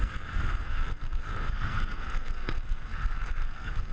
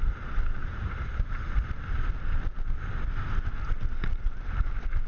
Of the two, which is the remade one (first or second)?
first